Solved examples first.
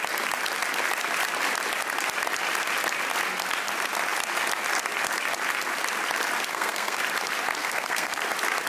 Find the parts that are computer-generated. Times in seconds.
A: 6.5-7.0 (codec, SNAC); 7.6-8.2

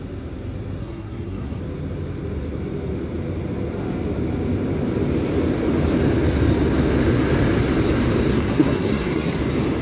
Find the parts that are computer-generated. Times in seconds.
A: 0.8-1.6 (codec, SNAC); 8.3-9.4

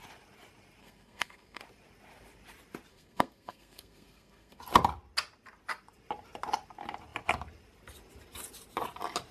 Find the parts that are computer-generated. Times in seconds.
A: 0.8-1.6 (codec, SNAC); 2.9-4.6

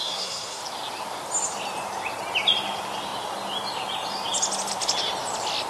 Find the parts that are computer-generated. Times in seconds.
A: 0.0-0.6 (codec, SNAC)